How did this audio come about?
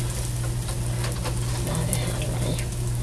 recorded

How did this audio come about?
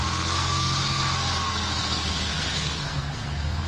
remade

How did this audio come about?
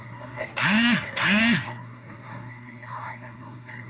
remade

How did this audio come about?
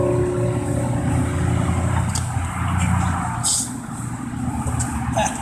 recorded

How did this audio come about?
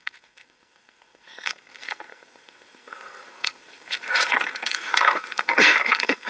remade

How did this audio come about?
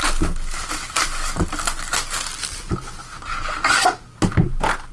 recorded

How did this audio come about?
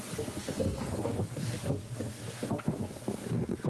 remade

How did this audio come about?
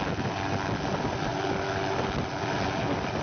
recorded